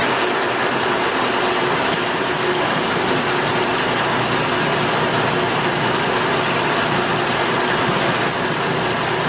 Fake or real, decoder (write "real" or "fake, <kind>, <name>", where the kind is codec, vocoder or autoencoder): real